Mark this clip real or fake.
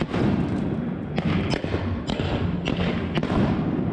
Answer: real